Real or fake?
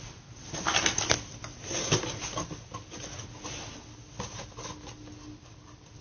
real